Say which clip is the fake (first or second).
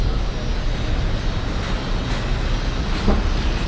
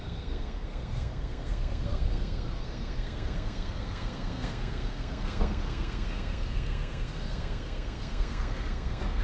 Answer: second